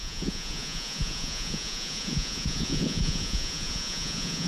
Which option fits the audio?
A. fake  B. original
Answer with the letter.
A